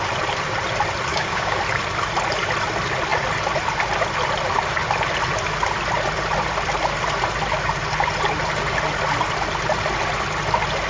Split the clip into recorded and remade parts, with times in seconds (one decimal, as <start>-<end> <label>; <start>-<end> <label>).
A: 0.0-1.1 recorded; 1.1-1.6 remade; 1.6-10.9 recorded